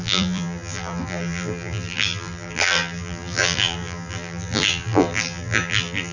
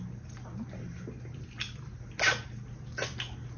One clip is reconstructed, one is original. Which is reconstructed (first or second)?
first